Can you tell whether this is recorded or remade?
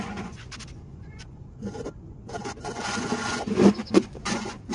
remade